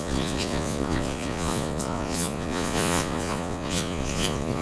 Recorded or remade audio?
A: remade